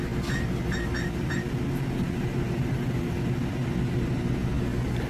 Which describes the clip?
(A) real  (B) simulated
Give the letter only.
A